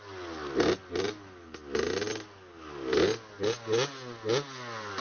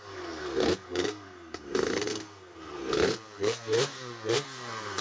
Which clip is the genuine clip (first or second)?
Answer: first